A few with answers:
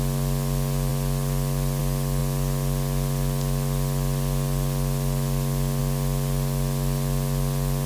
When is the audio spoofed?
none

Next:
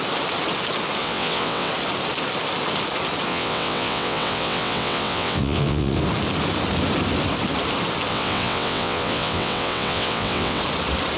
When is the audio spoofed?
1.0-1.7 (vocoder, WaveNeXt); 3.3-6.0; 8.1-10.6

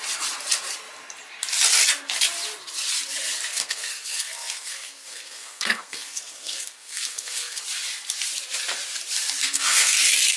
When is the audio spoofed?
3.5-7.6 (codec, SNAC); 9.4-10.0